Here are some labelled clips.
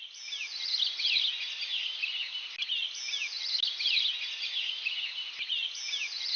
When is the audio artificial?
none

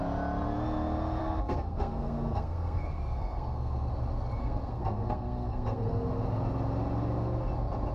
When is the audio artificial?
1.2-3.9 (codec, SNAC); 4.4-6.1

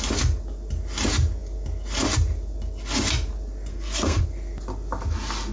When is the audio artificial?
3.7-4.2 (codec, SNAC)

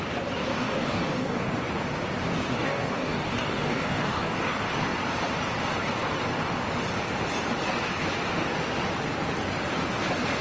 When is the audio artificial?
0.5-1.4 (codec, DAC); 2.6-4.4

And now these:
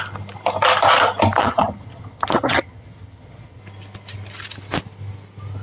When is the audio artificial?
1.4-3.6 (vocoder, HiFi-GAN)

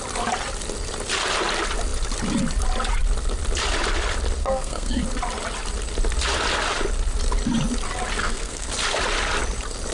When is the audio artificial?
4.4-5.0 (codec, SNAC); 8.2-8.7

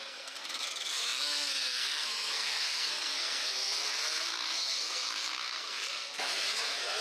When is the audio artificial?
0.0-7.0 (codec, SNAC)

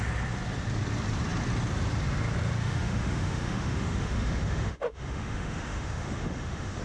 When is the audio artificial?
2.6-6.8 (autoencoder, DAC-VAE)